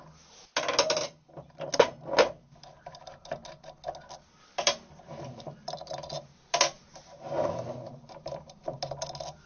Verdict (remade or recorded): recorded